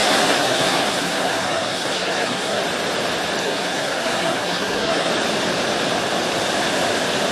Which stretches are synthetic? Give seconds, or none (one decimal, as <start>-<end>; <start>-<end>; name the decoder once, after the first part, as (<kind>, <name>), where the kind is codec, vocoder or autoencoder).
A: 0.0-2.6 (codec, SNAC); 3.4-5.1